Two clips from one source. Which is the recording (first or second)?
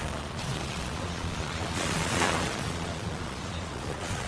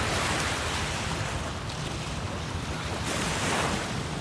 second